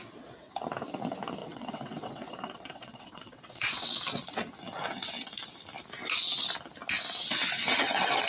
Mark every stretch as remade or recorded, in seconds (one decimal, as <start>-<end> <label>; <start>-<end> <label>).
0.0-1.4 recorded; 1.4-3.9 remade; 3.9-8.3 recorded

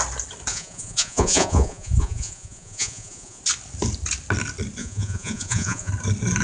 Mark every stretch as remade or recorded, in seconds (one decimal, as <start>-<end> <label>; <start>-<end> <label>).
0.0-0.5 recorded; 0.5-3.4 remade; 3.4-4.8 recorded; 4.8-5.9 remade; 5.9-6.4 recorded

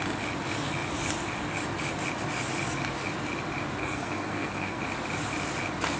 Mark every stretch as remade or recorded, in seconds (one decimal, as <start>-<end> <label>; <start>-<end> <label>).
0.0-3.8 recorded; 3.8-4.8 remade; 4.8-6.0 recorded

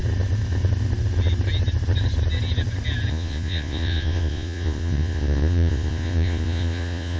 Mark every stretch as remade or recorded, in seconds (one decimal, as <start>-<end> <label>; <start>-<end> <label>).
0.0-3.1 recorded; 3.1-7.2 remade